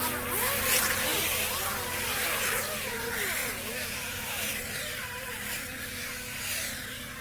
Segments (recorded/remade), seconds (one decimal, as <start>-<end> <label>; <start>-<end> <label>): 0.0-1.1 recorded; 1.1-1.6 remade; 1.6-3.4 recorded; 3.4-6.4 remade; 6.4-7.2 recorded